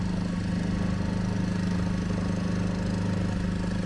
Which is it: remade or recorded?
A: recorded